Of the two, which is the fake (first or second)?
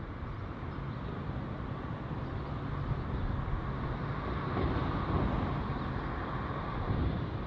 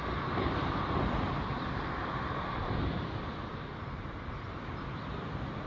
second